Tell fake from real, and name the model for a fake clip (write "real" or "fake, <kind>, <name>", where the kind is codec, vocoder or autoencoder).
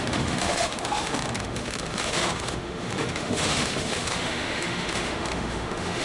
fake, autoencoder, DAC-VAE